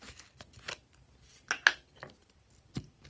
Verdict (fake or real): real